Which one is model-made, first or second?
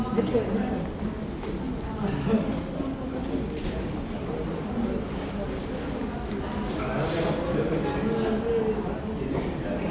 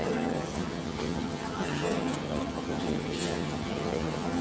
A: second